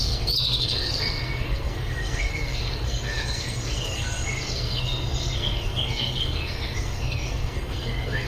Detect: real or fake fake